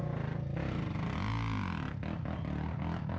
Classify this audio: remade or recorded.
recorded